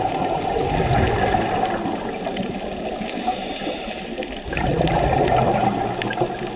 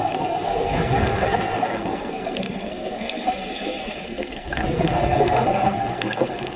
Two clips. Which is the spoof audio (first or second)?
second